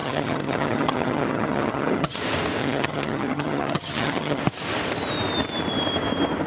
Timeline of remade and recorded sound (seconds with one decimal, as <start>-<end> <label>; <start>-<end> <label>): 0.0-2.2 remade; 2.2-2.6 recorded; 2.6-4.4 remade; 4.4-6.5 recorded